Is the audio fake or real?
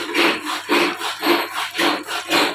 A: real